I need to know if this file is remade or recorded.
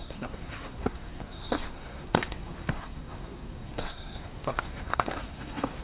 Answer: remade